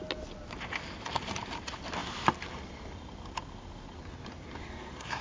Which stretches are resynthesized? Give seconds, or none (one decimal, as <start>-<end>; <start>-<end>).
4.6-5.2